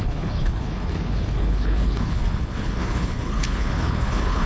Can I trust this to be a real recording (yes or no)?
no